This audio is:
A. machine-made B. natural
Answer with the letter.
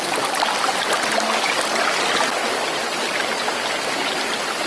B